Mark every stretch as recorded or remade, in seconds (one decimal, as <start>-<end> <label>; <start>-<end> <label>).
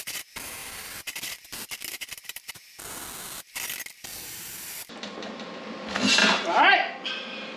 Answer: 0.0-0.6 recorded; 0.6-2.5 remade; 2.5-6.2 recorded; 6.2-7.1 remade; 7.1-7.6 recorded